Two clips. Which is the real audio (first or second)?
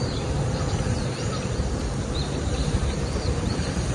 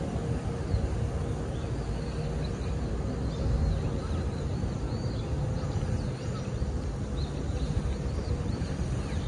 second